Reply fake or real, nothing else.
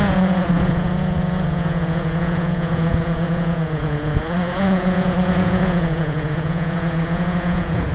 fake